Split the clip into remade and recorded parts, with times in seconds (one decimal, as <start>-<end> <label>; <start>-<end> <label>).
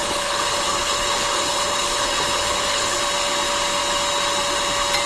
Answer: 0.0-3.0 remade; 3.0-5.1 recorded